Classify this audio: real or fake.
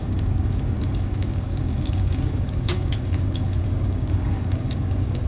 fake